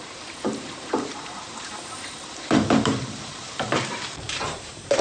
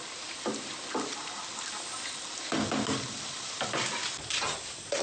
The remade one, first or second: first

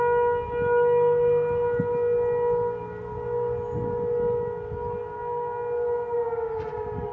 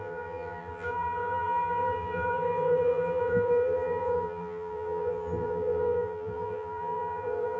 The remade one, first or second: second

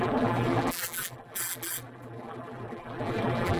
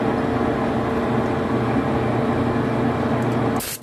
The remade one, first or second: first